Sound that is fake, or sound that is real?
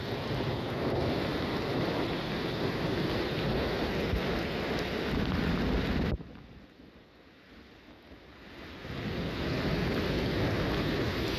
real